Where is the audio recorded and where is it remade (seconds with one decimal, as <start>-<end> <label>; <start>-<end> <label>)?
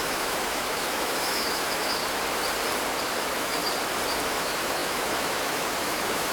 0.0-2.0 remade; 2.0-3.2 recorded; 3.2-3.6 remade; 3.6-4.3 recorded; 4.3-6.3 remade